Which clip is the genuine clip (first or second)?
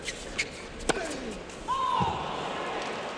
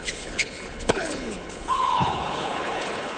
first